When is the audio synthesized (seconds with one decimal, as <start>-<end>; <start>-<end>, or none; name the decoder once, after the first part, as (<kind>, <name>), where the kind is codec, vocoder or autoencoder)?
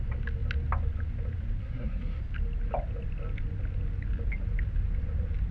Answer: 1.6-2.2 (codec, SNAC)